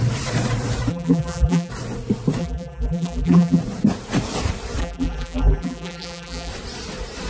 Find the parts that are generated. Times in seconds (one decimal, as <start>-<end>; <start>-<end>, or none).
0.9-1.7; 2.4-3.6; 4.8-6.5